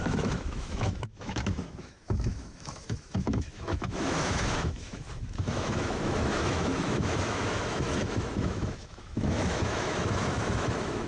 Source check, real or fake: fake